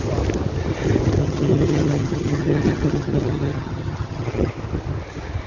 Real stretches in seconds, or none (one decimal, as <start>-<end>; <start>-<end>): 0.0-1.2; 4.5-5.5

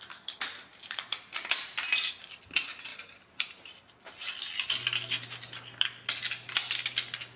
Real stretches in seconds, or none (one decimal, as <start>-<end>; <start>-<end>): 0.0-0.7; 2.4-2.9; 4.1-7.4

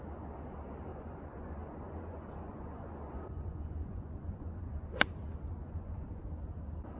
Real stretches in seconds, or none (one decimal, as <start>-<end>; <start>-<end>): 0.0-0.9; 5.1-5.6; 6.2-7.0

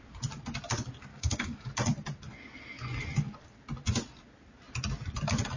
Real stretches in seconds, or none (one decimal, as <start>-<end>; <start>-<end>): 0.0-1.1; 1.7-5.6

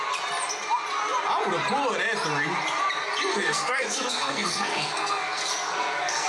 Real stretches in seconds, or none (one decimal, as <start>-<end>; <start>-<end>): 0.0-3.3

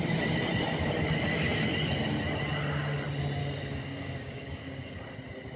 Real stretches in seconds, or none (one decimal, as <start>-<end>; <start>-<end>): 0.0-3.4; 5.0-5.6

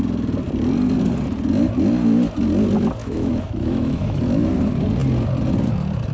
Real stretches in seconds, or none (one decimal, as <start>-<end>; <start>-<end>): 0.0-3.0; 4.2-6.1

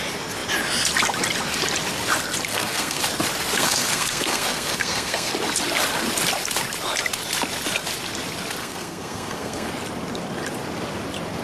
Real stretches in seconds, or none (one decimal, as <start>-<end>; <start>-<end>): 0.0-2.5; 3.0-3.5; 5.3-8.6; 9.7-11.4